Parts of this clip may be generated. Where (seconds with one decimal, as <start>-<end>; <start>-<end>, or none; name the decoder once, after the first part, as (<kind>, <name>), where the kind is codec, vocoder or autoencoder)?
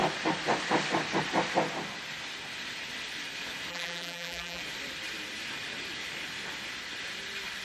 3.7-4.6 (vocoder, BigVGAN v2)